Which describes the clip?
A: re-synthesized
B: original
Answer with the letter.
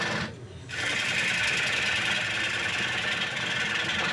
B